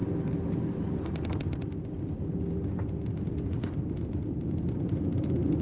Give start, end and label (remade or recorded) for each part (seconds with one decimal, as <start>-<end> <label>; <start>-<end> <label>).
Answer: 0.0-5.6 recorded